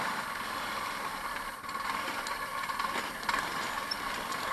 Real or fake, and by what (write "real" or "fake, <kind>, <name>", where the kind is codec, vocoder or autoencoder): real